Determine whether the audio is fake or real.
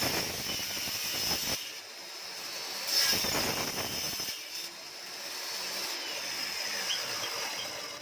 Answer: real